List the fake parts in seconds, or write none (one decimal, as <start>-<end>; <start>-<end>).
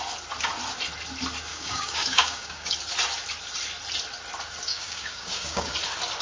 1.5-2.7; 4.7-5.7